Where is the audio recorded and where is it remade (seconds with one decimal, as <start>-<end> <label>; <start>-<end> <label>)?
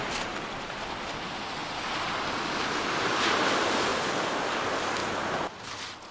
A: 0.0-1.6 recorded; 1.6-2.2 remade; 2.2-3.9 recorded; 3.9-4.4 remade; 4.4-6.1 recorded